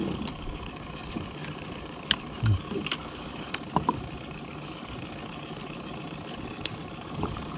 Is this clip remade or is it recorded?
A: remade